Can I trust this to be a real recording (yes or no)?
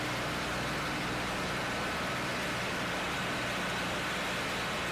yes